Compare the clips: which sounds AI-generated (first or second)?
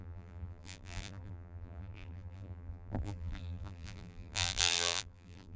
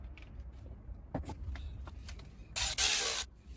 first